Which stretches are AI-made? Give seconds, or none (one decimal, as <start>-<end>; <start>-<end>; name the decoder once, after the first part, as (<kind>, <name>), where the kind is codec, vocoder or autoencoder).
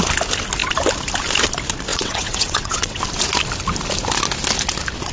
1.9-3.0 (vocoder, WaveNeXt)